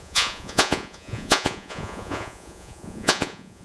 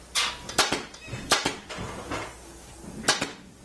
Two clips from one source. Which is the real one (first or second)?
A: second